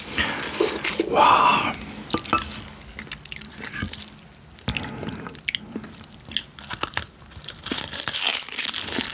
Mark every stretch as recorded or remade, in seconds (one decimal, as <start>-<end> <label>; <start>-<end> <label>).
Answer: 0.0-9.1 recorded